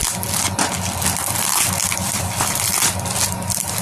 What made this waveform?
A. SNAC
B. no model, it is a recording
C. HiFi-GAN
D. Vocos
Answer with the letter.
B